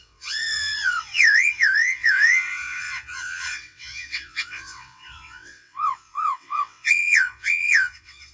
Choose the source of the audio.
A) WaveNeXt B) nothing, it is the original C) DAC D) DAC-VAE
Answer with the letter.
A